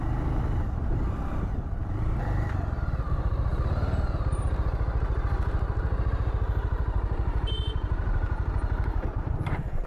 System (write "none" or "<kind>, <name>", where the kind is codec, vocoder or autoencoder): vocoder, BigVGAN v2